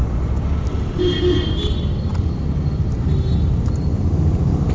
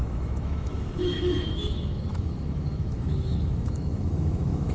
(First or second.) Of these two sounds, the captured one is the first